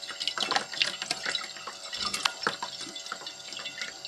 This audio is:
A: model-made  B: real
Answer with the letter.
B